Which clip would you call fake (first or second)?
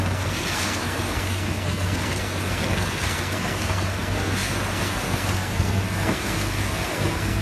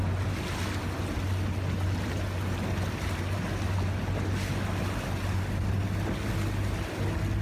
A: first